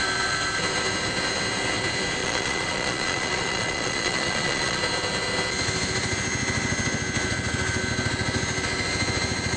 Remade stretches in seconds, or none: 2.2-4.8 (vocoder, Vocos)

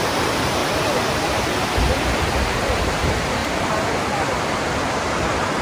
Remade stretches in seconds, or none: 0.0-0.6 (vocoder, BigVGAN v2); 1.9-3.4; 4.9-5.6

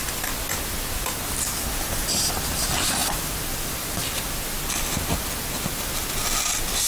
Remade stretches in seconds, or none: 3.0-4.0 (vocoder, BigVGAN v2)

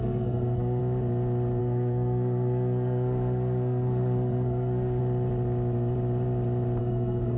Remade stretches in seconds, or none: 0.0-0.8 (codec, SNAC); 1.6-5.0; 6.8-7.4

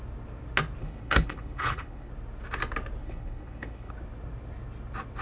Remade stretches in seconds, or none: 0.8-2.1 (codec, HILCodec); 3.0-3.9